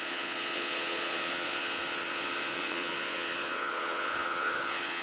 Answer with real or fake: fake